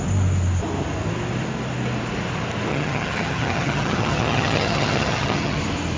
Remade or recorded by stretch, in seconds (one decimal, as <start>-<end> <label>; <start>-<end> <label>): 0.0-2.7 recorded; 2.7-5.6 remade; 5.6-6.0 recorded